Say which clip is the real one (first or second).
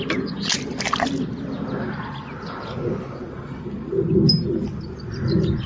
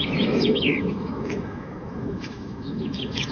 first